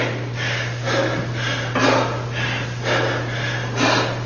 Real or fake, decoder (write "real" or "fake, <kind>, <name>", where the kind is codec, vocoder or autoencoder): real